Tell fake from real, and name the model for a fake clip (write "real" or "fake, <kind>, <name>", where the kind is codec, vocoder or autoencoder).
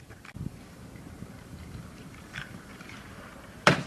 fake, vocoder, BigVGAN v2